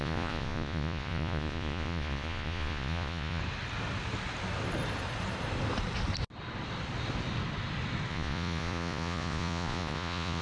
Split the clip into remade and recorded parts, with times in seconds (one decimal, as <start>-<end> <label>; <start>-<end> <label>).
0.0-3.4 remade; 3.4-8.1 recorded; 8.1-10.4 remade